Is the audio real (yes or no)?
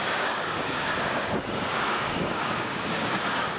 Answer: no